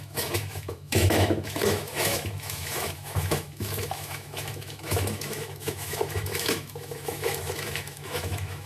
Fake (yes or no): yes